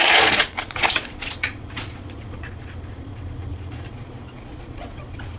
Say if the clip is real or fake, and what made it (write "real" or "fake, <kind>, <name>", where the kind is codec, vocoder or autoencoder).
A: fake, vocoder, Vocos